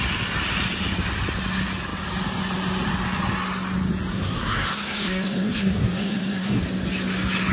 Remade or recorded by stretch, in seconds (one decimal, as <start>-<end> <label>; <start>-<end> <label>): 0.0-4.1 recorded; 4.1-6.6 remade; 6.6-7.5 recorded